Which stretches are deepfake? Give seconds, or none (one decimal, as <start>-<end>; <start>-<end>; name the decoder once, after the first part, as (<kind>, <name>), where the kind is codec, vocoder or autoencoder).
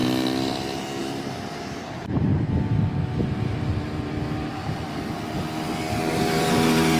1.0-2.3 (vocoder, BigVGAN v2); 3.2-4.6; 6.0-7.0